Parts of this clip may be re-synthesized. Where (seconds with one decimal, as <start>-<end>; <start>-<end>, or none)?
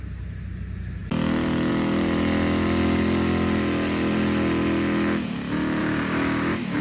5.8-6.8